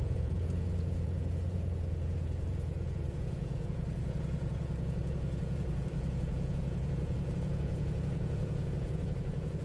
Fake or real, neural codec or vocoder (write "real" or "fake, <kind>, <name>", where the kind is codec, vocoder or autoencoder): fake, vocoder, Vocos